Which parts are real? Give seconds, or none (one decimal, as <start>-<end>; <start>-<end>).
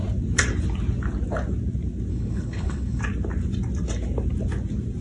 0.0-2.1; 3.0-5.0